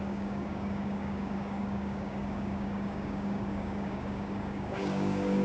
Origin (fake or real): fake